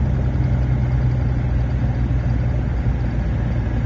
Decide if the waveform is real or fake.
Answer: real